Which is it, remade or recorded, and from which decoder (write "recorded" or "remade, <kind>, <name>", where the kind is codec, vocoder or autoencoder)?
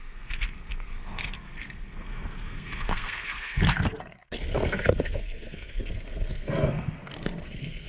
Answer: remade, codec, SNAC